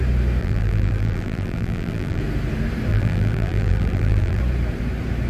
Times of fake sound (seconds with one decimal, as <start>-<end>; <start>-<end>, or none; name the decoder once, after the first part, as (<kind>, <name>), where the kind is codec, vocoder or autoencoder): 0.4-2.2 (vocoder, BigVGAN v2); 2.9-4.4